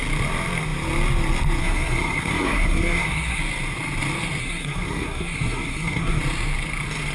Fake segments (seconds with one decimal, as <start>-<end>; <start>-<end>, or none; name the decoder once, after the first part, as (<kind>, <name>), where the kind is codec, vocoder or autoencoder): 1.6-3.4 (codec, SNAC); 4.4-6.2